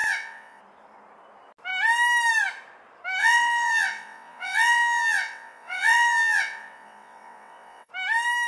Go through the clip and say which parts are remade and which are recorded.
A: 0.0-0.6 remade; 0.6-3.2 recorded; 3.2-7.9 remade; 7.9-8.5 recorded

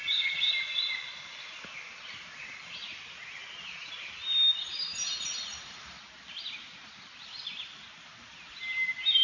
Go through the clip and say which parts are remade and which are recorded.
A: 0.0-0.5 remade; 0.5-9.2 recorded

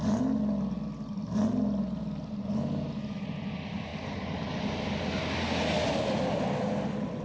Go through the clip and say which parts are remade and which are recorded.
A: 0.0-7.2 recorded

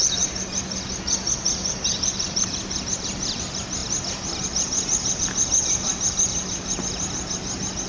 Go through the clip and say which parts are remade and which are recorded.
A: 0.0-7.9 recorded

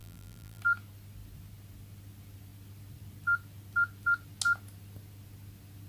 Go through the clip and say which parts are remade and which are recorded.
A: 0.0-0.6 remade; 0.6-5.9 recorded

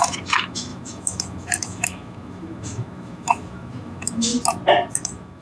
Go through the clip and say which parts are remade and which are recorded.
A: 0.0-4.3 remade; 4.3-4.9 recorded; 4.9-5.4 remade